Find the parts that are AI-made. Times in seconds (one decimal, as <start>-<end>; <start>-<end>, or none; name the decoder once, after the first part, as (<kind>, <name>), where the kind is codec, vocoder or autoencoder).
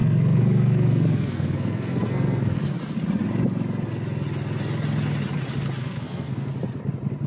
0.0-2.6 (codec, SNAC); 5.8-6.5